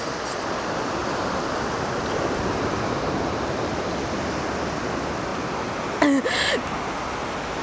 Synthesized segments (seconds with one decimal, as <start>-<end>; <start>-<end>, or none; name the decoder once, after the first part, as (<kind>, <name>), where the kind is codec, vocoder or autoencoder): 1.0-2.4 (vocoder, BigVGAN v2); 5.3-5.9